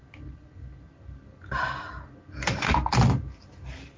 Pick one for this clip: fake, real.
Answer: real